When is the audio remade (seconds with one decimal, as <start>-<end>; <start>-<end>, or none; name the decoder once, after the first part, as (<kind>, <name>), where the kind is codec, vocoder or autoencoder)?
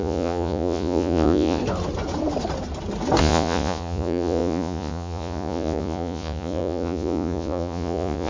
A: 0.0-1.6 (vocoder, Vocos); 3.2-8.3